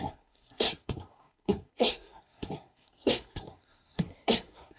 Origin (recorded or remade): remade